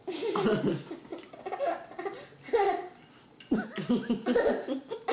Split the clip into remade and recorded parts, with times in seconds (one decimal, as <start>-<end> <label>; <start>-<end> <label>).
0.0-5.1 recorded